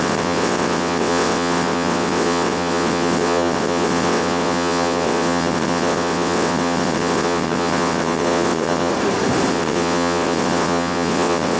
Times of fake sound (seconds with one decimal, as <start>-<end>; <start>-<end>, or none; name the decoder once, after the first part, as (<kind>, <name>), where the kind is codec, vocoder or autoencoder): 0.0-8.9 (vocoder, WaveNeXt); 9.5-11.6

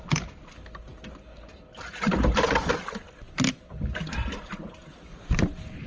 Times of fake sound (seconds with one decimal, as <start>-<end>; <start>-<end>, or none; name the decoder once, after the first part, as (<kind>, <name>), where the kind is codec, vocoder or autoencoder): none

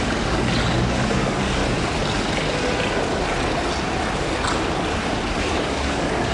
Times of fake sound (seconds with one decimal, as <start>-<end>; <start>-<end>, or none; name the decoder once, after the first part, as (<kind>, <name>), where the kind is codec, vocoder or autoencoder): 0.0-1.6 (codec, DAC); 5.4-6.3

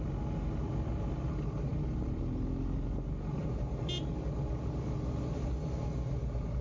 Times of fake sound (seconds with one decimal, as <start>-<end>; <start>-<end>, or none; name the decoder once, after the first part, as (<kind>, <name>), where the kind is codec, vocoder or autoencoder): none

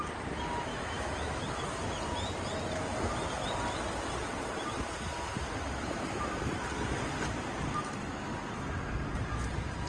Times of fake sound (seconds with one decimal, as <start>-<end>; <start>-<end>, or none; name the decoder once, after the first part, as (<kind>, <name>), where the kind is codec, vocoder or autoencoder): 0.7-1.5 (autoencoder, DAC-VAE)

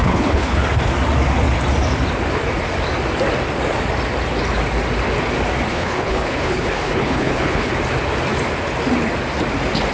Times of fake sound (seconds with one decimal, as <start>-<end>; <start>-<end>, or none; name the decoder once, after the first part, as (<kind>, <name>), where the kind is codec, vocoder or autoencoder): 0.0-0.6 (codec, HILCodec); 5.7-7.7

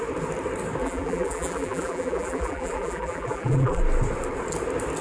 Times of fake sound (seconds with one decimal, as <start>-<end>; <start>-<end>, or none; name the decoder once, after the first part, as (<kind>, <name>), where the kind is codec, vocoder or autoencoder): 0.8-3.8 (vocoder, BigVGAN v2)

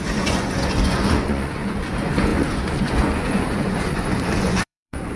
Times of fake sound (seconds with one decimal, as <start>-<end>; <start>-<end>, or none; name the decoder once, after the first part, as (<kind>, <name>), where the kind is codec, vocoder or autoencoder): 0.0-5.2 (vocoder, Vocos)